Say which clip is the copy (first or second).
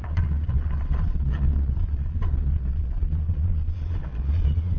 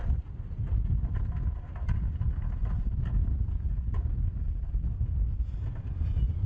first